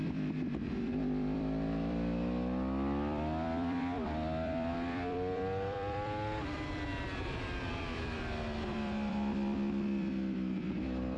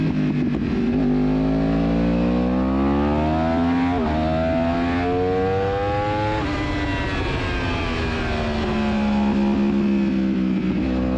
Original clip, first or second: second